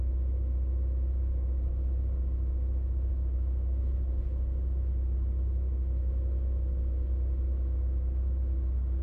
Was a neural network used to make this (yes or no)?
no